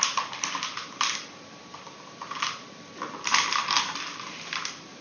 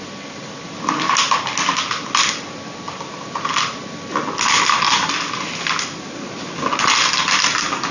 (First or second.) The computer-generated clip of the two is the first